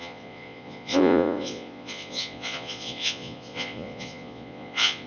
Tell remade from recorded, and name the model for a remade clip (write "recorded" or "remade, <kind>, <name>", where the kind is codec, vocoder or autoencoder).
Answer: remade, vocoder, Vocos